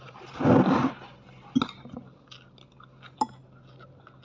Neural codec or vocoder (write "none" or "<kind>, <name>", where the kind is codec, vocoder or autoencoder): none